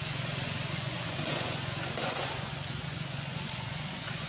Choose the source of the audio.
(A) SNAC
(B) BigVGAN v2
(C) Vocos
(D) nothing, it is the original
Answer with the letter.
C